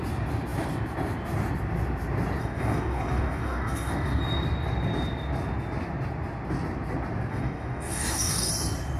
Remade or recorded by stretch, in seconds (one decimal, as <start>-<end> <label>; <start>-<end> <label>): 0.0-2.4 recorded; 2.4-4.2 remade; 4.2-7.3 recorded; 7.3-8.5 remade; 8.5-9.0 recorded

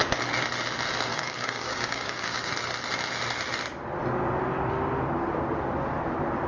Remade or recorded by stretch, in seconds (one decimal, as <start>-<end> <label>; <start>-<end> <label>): 0.0-1.1 recorded; 1.1-2.5 remade; 2.5-6.5 recorded

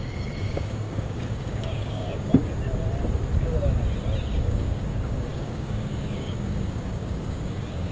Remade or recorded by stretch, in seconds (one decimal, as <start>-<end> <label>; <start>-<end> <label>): 0.0-2.3 remade; 2.3-4.3 recorded; 4.3-7.9 remade

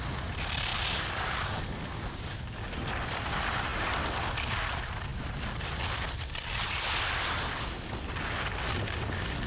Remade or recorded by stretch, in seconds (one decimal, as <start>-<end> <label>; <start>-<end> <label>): 0.0-9.5 recorded

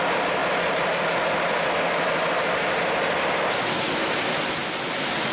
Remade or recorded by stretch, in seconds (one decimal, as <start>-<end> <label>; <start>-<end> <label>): 0.0-5.3 recorded

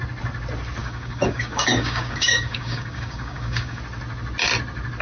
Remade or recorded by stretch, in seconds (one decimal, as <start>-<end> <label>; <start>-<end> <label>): 0.0-0.8 recorded; 0.8-3.8 remade; 3.8-5.0 recorded

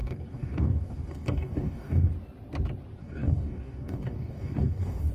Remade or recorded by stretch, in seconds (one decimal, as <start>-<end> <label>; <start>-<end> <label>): 0.0-2.1 remade; 2.1-3.0 recorded; 3.0-5.1 remade